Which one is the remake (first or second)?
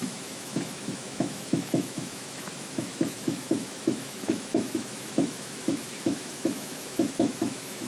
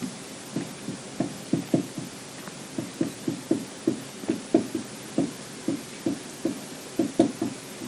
first